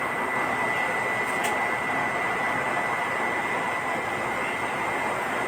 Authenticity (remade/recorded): recorded